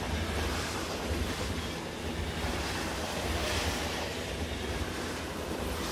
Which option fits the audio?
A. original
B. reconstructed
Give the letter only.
A